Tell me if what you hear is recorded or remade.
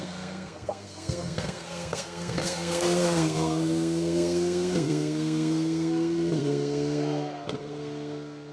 remade